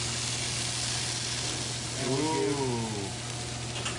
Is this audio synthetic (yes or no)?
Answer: no